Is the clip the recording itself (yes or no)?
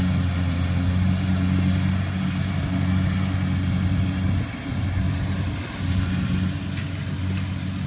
yes